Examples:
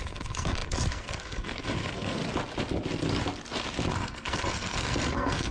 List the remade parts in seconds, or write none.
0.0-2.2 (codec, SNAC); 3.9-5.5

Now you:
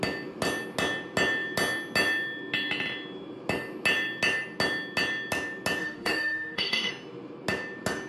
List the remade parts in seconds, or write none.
5.8-6.9 (autoencoder, DAC-VAE)